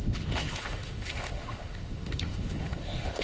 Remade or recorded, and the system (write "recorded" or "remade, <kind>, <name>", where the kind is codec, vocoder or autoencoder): remade, autoencoder, DAC-VAE